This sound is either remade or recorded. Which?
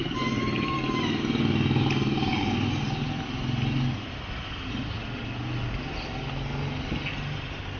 recorded